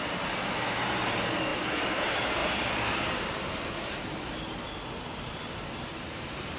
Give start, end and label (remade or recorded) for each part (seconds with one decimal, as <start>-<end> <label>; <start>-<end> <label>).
0.0-2.4 remade; 2.4-5.3 recorded; 5.3-6.6 remade